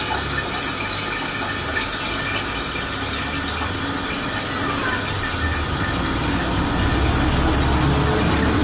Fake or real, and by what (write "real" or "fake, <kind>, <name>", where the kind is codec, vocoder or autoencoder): real